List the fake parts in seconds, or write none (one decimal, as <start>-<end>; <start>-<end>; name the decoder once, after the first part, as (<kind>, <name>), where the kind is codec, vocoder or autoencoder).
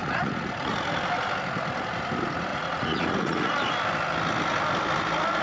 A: 0.0-0.7 (vocoder, Vocos); 2.5-3.5